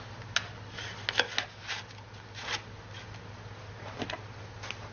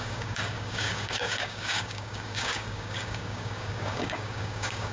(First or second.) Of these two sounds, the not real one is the second